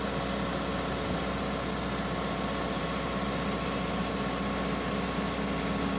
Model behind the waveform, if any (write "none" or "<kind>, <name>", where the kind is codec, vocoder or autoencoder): none